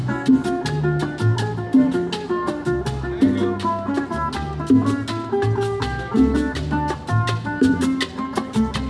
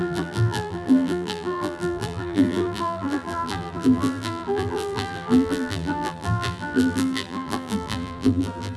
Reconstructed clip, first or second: second